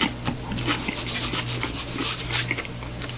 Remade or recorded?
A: recorded